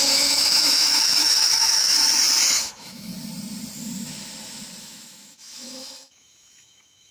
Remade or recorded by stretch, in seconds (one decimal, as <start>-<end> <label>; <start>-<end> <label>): 0.0-1.9 remade; 1.9-2.5 recorded; 2.5-3.1 remade; 3.1-4.8 recorded; 4.8-7.1 remade